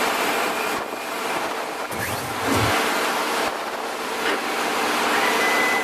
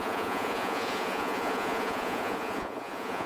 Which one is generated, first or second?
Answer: second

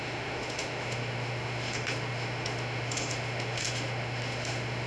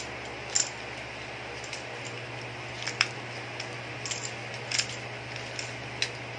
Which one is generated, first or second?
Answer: first